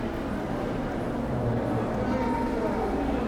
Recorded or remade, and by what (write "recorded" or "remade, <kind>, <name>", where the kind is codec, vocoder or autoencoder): recorded